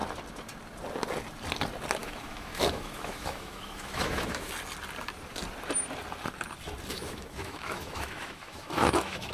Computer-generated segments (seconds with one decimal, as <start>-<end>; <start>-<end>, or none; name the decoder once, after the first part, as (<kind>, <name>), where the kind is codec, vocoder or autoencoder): 2.0-4.5 (autoencoder, DAC-VAE); 6.9-9.3